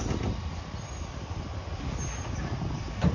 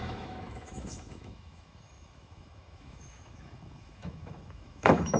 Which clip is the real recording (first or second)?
first